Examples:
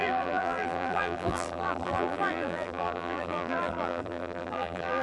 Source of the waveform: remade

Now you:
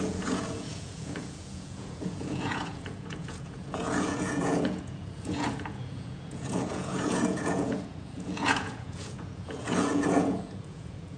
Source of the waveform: remade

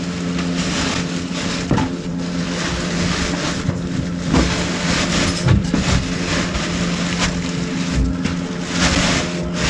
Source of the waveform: recorded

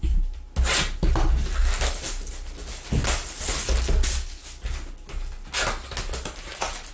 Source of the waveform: recorded